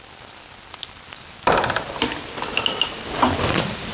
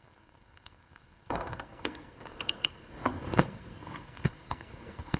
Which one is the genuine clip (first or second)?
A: first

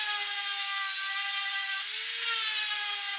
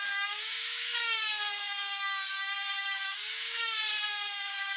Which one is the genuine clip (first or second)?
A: first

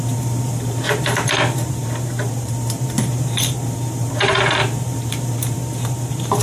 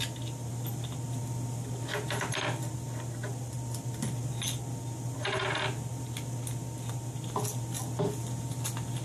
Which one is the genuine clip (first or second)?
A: second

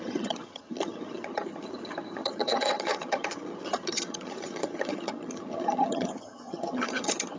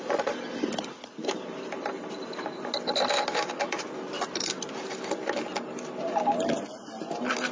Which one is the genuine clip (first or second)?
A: second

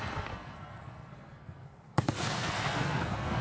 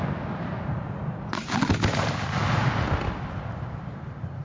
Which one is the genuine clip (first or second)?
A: second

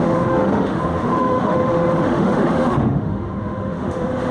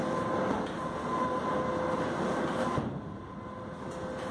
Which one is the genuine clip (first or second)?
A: second